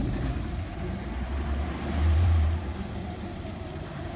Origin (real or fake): fake